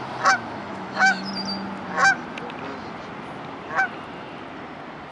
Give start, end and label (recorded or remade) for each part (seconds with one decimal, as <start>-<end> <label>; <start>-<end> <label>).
0.0-0.6 recorded; 0.6-1.3 remade; 1.3-5.1 recorded